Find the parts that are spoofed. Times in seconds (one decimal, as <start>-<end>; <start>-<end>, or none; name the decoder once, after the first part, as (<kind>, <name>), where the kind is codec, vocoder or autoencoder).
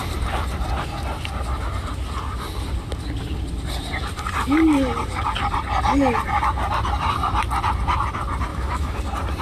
8.5-9.0 (autoencoder, DAC-VAE)